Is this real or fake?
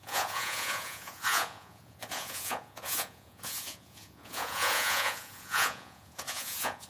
fake